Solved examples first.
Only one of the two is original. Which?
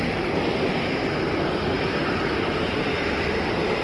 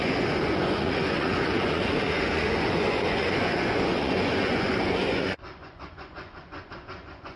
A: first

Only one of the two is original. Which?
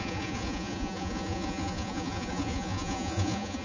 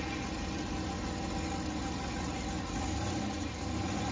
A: second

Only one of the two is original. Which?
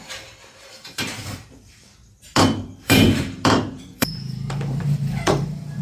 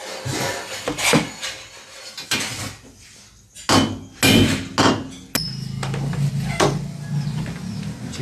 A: second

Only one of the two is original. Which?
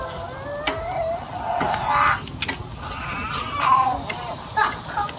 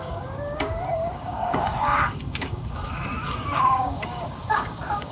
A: first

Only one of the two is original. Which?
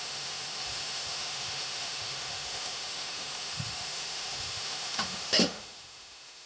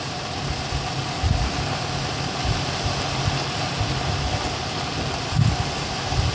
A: second